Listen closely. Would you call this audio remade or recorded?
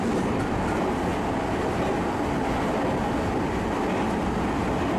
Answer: recorded